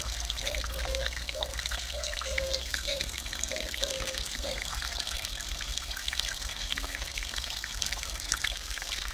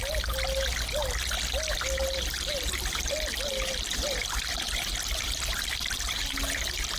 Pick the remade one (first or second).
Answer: first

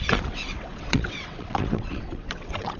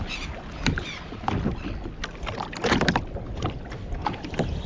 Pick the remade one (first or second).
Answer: first